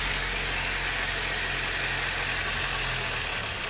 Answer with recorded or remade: recorded